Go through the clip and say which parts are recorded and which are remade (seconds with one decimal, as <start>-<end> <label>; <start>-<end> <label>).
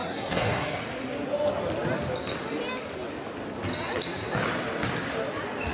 0.0-0.8 remade; 0.8-5.7 recorded